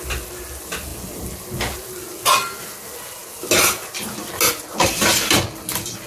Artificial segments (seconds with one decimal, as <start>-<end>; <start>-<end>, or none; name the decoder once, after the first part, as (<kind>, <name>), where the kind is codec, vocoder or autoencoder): none